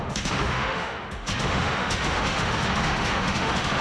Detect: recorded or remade remade